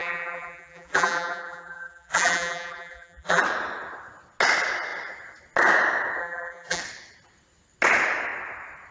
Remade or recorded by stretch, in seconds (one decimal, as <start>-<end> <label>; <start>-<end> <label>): 0.0-3.4 remade; 3.4-6.2 recorded; 6.2-6.8 remade; 6.8-8.9 recorded